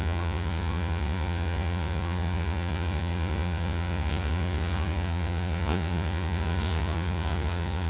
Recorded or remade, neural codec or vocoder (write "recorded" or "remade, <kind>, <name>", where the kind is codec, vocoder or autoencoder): remade, vocoder, Vocos